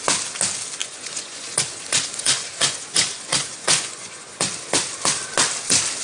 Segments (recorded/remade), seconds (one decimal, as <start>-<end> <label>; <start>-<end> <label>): 0.0-0.8 recorded; 0.8-4.4 remade; 4.4-6.0 recorded